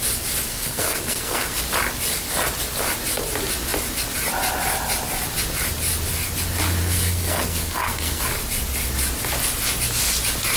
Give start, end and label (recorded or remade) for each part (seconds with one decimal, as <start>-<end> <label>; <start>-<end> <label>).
0.0-0.5 recorded; 0.5-1.6 remade; 1.6-6.8 recorded; 6.8-8.2 remade; 8.2-10.6 recorded